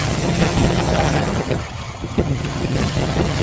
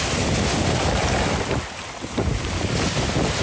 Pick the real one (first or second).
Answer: second